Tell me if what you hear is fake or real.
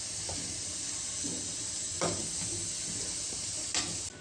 real